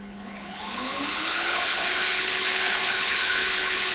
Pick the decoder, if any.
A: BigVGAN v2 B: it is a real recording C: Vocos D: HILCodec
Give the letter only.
D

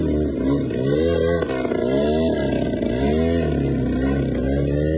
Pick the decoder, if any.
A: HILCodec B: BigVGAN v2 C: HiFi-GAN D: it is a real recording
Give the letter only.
D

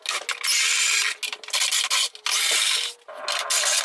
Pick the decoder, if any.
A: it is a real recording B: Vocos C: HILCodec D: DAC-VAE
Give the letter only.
A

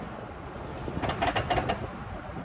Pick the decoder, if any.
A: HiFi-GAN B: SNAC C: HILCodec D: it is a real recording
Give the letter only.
D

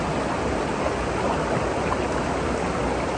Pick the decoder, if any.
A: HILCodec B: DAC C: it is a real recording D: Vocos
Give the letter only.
C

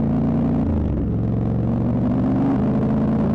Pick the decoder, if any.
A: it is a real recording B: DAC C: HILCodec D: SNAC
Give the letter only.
A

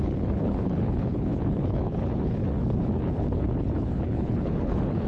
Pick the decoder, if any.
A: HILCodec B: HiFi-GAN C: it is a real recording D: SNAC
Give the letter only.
A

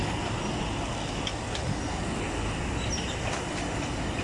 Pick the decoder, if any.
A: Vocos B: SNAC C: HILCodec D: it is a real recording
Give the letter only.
D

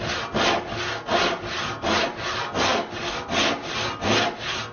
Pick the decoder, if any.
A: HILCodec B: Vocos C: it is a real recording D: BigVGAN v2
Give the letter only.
C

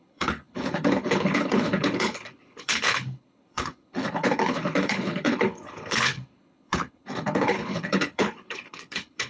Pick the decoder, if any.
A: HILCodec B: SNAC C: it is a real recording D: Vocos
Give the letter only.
A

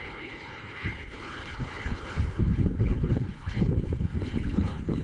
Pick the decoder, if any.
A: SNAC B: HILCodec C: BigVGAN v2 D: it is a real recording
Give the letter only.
B